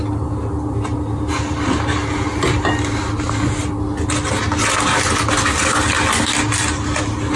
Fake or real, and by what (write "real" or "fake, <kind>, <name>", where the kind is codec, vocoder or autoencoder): real